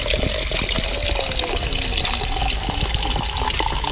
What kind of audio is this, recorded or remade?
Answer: recorded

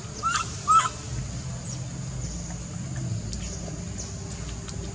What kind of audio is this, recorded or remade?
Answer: recorded